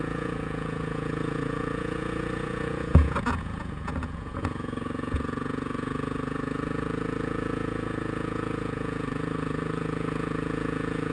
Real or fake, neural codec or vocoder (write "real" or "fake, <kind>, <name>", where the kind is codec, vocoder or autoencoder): fake, vocoder, Vocos